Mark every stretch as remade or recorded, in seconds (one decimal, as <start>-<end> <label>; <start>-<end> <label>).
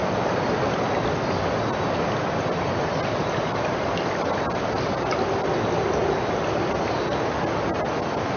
0.0-0.6 remade; 0.6-8.4 recorded